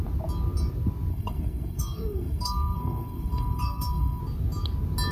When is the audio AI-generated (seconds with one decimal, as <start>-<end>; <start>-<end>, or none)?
1.1-4.2